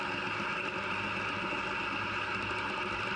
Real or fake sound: real